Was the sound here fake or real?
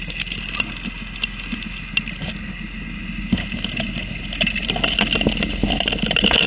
real